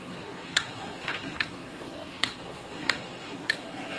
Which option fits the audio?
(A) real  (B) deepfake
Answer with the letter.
B